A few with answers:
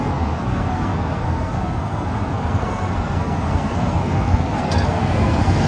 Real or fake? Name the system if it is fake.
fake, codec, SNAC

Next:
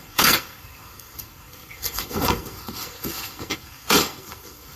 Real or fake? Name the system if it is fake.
fake, codec, SNAC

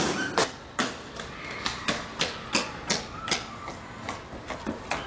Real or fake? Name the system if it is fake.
real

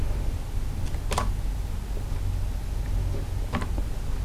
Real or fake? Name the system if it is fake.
real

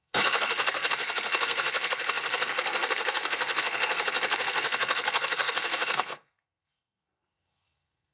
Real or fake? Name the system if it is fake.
fake, codec, SNAC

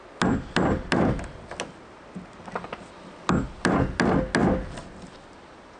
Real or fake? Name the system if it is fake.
real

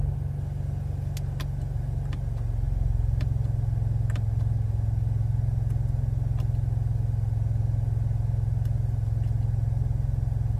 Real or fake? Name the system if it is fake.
real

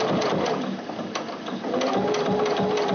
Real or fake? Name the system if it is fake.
real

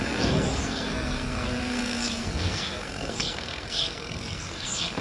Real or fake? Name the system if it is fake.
fake, codec, SNAC